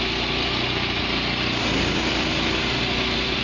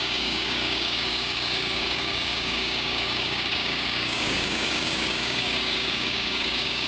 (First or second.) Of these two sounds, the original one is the first